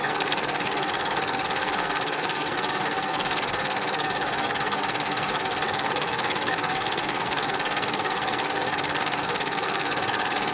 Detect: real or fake fake